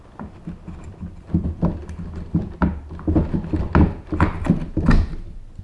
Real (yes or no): yes